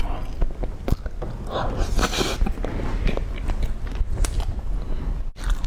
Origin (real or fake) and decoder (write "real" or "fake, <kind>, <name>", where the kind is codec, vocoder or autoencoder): real